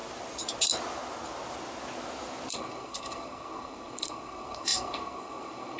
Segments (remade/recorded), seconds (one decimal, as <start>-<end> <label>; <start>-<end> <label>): 0.0-2.5 recorded; 2.5-5.8 remade